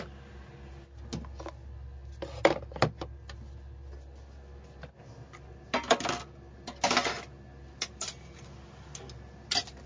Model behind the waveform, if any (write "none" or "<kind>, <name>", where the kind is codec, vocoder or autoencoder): none